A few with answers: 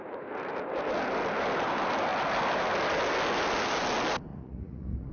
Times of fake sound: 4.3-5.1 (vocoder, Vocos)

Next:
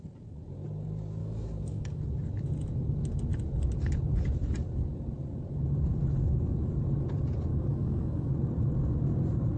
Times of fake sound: 1.2-2.0 (codec, DAC); 7.5-8.3

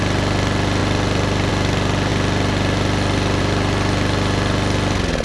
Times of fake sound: none